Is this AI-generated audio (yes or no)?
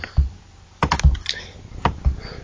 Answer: no